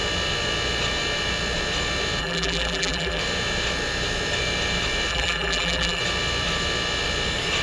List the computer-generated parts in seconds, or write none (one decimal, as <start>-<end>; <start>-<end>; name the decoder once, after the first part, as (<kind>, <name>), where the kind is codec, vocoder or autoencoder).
2.2-3.2 (vocoder, BigVGAN v2); 5.1-6.0